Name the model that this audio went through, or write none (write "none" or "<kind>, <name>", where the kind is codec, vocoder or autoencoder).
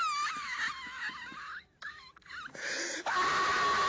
none